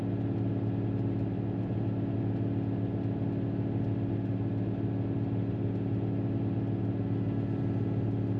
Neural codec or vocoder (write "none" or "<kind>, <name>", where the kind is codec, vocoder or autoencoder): none